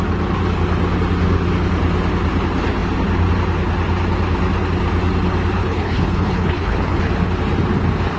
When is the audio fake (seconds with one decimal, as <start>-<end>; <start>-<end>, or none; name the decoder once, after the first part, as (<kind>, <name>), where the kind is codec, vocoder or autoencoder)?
5.6-7.1 (codec, HILCodec)